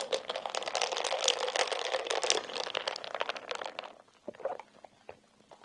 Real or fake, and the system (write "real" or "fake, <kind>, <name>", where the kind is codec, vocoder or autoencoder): real